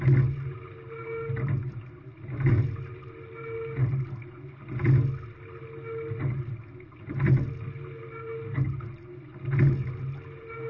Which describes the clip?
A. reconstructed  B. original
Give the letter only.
B